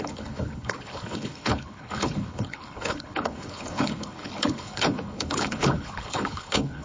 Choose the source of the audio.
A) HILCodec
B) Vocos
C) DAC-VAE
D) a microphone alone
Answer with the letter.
A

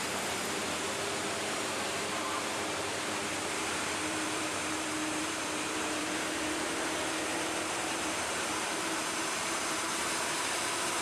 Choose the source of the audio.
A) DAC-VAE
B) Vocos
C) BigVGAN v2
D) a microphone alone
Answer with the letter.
C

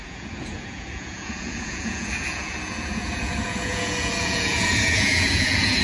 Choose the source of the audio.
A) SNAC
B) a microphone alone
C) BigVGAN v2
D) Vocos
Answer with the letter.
D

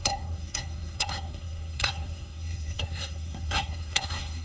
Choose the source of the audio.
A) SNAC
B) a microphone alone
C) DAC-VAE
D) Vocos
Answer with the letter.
A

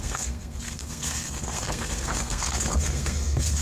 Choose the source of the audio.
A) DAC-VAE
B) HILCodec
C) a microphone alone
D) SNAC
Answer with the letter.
D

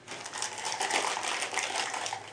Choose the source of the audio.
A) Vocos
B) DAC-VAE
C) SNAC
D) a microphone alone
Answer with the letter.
D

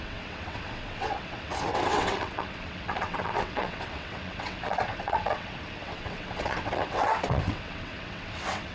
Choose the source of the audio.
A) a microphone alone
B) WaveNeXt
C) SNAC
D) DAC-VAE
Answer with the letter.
B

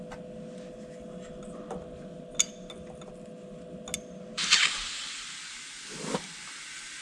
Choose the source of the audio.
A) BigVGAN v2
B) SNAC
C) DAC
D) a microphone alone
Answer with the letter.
D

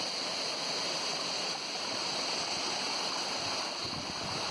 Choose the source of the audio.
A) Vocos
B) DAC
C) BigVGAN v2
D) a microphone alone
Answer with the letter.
D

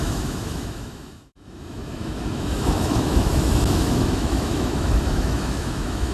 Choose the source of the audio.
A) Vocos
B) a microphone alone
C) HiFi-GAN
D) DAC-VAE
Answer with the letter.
D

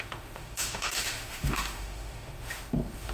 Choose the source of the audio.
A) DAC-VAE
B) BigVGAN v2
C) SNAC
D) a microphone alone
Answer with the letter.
A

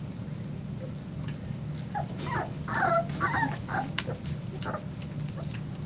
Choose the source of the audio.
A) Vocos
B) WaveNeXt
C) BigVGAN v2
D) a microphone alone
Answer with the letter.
D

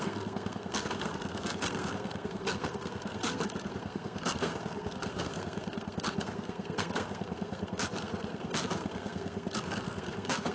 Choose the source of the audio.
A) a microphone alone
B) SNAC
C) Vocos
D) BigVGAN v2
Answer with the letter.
B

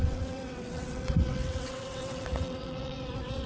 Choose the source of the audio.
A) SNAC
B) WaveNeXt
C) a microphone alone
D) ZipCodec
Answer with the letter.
B